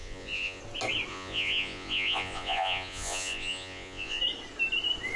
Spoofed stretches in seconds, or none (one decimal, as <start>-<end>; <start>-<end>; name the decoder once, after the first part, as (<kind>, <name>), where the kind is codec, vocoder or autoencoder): 0.0-0.6 (vocoder, Vocos); 1.1-4.2